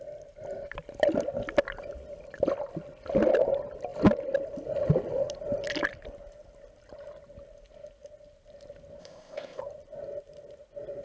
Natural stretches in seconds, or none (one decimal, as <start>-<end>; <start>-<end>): 0.0-9.0; 9.6-11.0